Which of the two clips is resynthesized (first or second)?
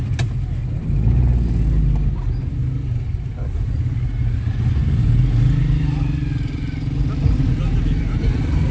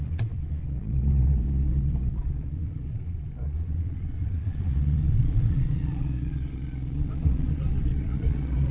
second